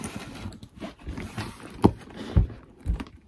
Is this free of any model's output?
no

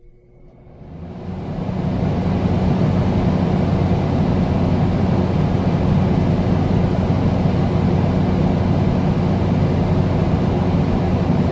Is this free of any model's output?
yes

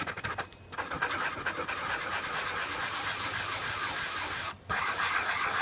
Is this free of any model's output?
yes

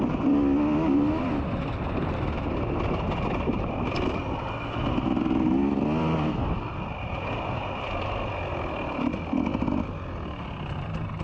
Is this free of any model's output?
yes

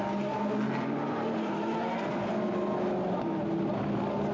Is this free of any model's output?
yes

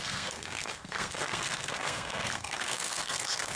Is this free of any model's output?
no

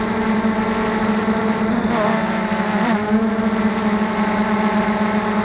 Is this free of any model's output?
yes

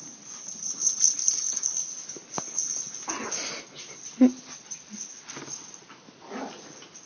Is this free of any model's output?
yes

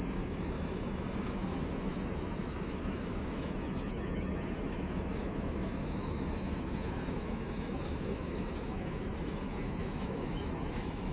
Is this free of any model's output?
no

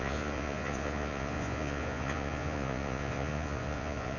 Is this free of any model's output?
no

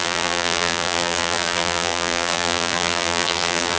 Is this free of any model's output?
no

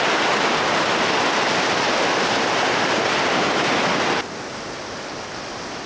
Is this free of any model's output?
yes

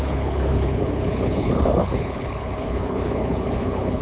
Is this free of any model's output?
no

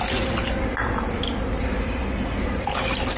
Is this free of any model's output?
yes